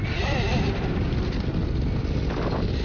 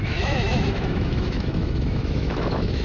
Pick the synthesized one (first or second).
second